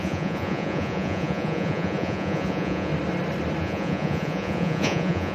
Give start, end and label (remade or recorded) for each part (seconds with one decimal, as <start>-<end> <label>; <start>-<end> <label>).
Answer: 0.0-2.9 remade; 2.9-3.6 recorded; 3.6-5.3 remade